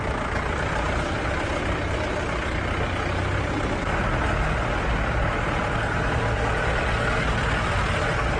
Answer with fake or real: real